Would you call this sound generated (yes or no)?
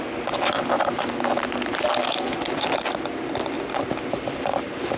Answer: no